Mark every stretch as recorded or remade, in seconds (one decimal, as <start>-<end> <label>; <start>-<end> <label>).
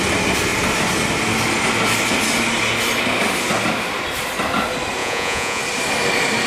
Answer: 0.0-5.0 recorded; 5.0-5.6 remade; 5.6-6.5 recorded